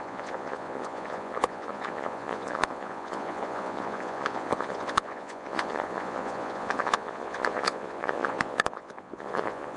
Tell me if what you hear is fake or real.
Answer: fake